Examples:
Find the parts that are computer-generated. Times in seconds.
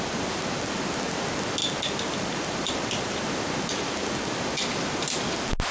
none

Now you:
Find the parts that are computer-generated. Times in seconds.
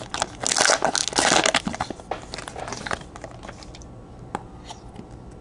none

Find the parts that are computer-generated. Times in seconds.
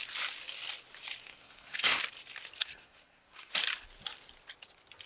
1.3-2.0 (codec, SNAC); 2.6-3.5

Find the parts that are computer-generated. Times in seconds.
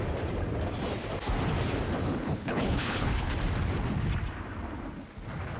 2.0-3.3 (codec, HILCodec)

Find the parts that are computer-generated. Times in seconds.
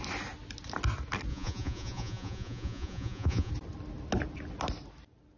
1.3-3.5 (vocoder, Vocos)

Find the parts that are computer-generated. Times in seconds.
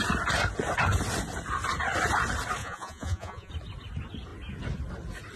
2.6-3.5 (vocoder, Vocos)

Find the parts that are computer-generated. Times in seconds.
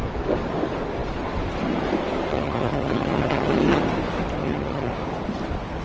2.3-3.8 (vocoder, HiFi-GAN); 4.4-4.9